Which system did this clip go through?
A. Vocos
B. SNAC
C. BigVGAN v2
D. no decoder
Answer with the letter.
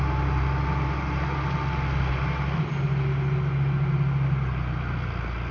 D